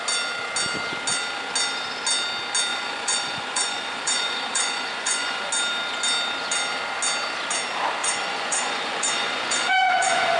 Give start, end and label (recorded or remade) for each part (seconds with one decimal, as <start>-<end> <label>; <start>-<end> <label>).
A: 0.0-2.7 recorded; 2.7-5.5 remade; 5.5-8.0 recorded; 8.0-10.4 remade